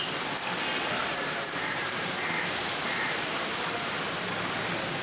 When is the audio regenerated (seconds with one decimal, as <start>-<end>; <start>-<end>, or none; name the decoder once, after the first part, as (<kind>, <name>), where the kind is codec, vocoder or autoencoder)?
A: 1.0-4.0 (vocoder, BigVGAN v2)